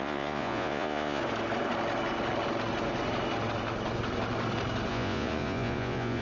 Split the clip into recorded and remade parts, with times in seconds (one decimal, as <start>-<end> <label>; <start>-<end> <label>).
0.0-1.2 remade; 1.2-4.9 recorded; 4.9-6.2 remade